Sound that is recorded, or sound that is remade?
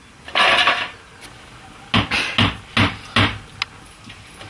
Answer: recorded